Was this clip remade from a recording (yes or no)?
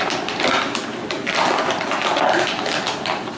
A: no